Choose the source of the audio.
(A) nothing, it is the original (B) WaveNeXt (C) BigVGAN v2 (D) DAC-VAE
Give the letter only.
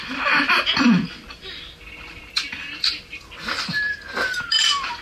A